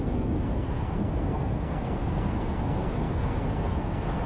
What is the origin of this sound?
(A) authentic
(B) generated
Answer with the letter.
B